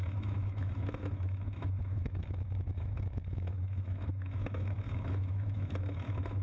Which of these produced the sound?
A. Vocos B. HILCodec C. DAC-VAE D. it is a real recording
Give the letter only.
C